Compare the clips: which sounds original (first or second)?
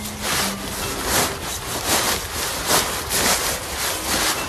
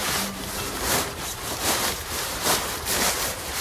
first